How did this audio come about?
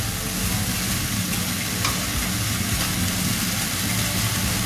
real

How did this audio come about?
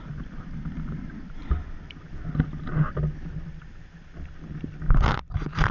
real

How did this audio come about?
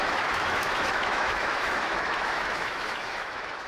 fake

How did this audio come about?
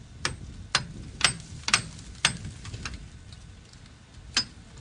real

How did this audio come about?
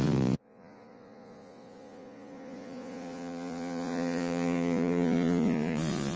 fake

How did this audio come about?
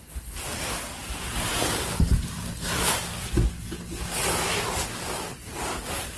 real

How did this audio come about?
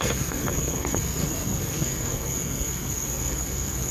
fake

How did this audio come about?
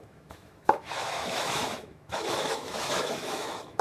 fake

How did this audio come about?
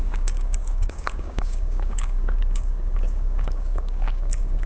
fake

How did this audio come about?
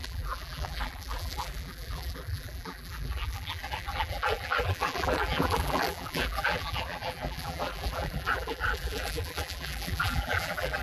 fake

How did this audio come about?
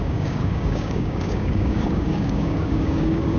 fake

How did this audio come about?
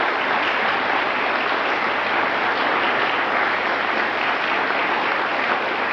real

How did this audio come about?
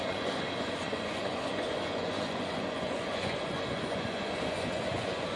fake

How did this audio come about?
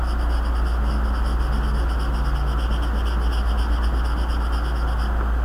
real